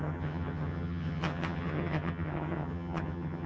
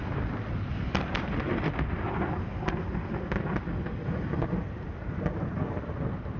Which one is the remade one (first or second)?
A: first